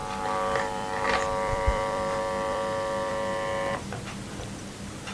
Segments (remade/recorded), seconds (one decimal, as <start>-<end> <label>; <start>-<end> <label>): 0.0-3.1 remade; 3.1-5.1 recorded